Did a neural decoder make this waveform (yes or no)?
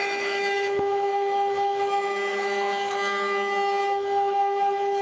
yes